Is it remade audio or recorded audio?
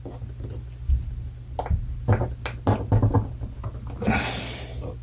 recorded